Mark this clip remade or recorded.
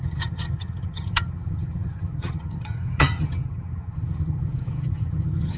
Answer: remade